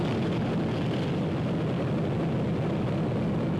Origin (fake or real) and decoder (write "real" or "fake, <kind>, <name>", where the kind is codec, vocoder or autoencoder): real